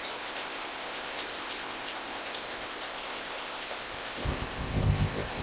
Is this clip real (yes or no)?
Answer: no